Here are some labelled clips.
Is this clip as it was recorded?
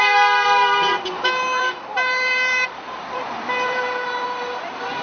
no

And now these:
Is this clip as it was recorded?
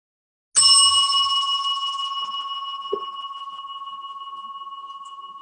yes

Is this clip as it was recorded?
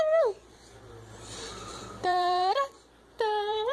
no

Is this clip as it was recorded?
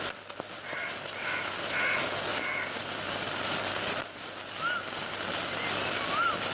yes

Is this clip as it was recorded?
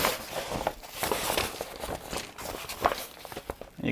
yes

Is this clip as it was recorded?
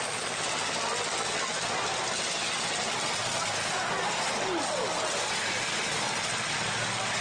yes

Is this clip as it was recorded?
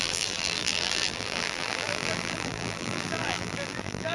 no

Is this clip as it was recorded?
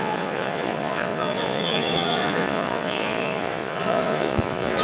no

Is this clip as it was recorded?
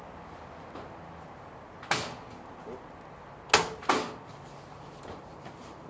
yes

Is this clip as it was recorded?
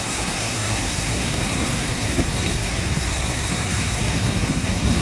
no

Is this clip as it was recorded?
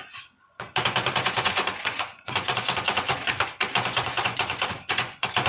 no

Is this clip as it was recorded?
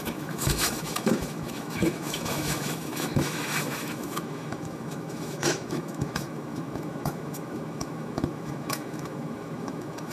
no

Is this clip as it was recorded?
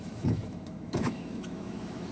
no